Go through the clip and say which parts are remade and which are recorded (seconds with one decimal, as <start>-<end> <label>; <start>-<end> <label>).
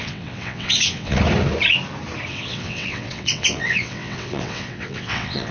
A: 0.0-1.2 remade; 1.2-2.3 recorded; 2.3-5.5 remade